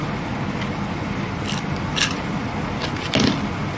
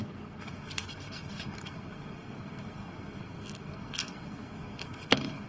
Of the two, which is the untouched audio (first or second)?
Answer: first